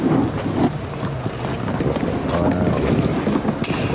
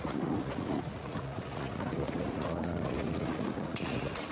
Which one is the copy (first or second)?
second